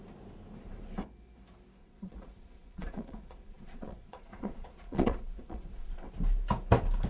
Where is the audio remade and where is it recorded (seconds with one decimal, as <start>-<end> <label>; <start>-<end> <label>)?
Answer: 0.0-1.8 recorded; 1.8-6.1 remade; 6.1-7.1 recorded